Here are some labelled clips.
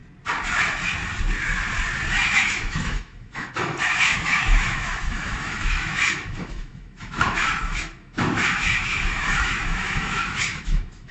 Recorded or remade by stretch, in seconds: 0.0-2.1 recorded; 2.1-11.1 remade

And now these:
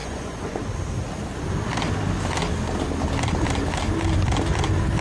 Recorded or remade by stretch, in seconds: 0.0-0.6 remade; 0.6-5.0 recorded

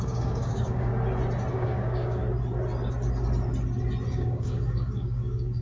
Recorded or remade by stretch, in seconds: 0.0-0.9 remade; 0.9-1.5 recorded; 1.5-2.2 remade; 2.2-4.1 recorded; 4.1-5.6 remade

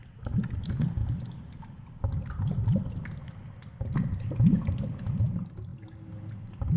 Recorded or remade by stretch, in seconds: 0.0-6.8 recorded